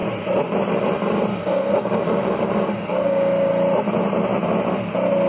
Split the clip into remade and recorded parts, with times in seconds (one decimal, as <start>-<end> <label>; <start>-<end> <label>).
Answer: 0.0-1.3 recorded; 1.3-3.5 remade; 3.5-5.3 recorded

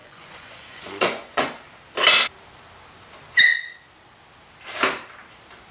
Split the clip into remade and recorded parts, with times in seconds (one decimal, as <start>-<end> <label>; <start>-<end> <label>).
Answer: 0.0-1.5 remade; 1.5-5.7 recorded

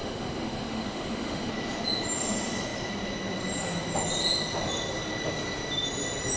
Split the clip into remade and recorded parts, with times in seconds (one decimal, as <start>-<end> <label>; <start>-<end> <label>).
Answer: 0.0-1.5 remade; 1.5-6.4 recorded

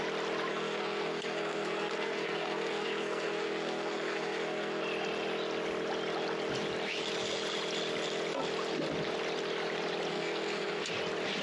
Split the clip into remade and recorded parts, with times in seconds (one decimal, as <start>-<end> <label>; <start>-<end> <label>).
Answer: 0.0-0.5 recorded; 0.5-4.8 remade; 4.8-10.1 recorded; 10.1-10.8 remade; 10.8-11.4 recorded

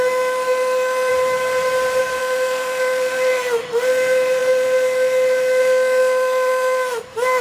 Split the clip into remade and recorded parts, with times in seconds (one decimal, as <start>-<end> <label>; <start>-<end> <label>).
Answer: 0.0-1.1 remade; 1.1-2.2 recorded; 2.2-7.4 remade

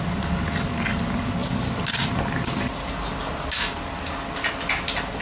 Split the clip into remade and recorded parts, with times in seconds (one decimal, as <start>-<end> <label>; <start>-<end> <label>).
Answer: 0.0-5.2 recorded